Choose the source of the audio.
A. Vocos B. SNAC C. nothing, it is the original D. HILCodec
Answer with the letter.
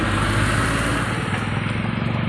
C